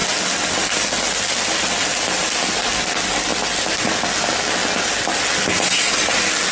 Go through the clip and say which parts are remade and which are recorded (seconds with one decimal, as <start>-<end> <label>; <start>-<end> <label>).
0.0-6.5 recorded